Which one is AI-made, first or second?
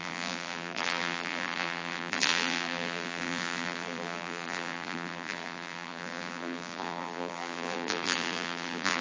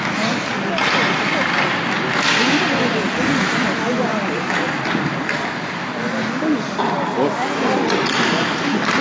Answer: first